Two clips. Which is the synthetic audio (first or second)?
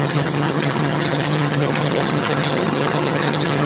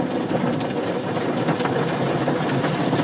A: first